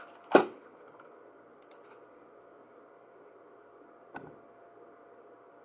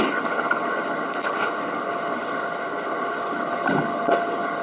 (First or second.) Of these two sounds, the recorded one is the first